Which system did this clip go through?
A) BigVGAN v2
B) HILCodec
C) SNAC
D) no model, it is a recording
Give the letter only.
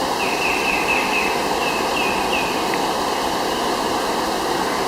D